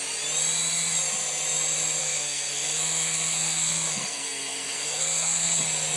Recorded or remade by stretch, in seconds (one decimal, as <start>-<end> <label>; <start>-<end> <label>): 0.0-2.0 recorded; 2.0-5.6 remade; 5.6-6.0 recorded